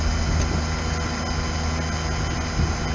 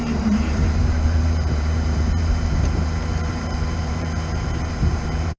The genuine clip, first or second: first